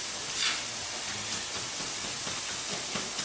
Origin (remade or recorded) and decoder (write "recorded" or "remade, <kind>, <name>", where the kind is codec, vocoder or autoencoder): recorded